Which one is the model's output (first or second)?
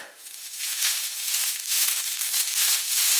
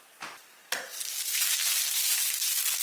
first